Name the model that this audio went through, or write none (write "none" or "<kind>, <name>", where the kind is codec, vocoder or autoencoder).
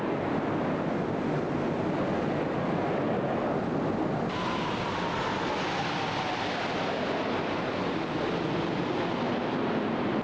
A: none